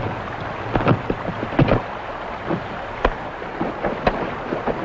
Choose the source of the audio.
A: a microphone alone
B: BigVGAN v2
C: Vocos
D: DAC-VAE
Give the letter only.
A